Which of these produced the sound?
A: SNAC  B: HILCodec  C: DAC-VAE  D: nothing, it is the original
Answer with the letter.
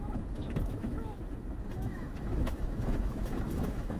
C